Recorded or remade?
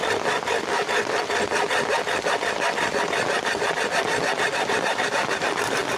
recorded